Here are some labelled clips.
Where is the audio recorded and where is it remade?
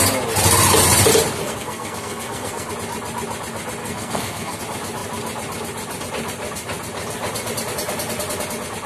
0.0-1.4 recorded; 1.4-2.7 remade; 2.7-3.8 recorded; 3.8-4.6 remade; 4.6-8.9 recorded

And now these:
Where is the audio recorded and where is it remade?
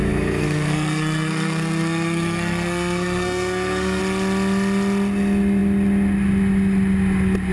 0.0-4.0 remade; 4.0-7.5 recorded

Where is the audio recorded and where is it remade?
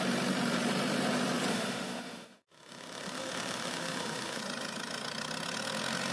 0.0-1.5 recorded; 1.5-4.4 remade; 4.4-6.1 recorded